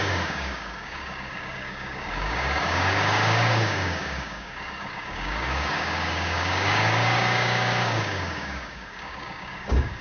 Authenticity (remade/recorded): remade